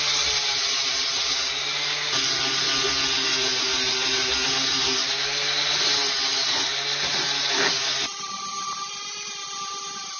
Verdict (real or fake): real